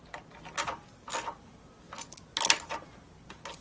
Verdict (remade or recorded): recorded